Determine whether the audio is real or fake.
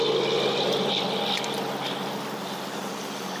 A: real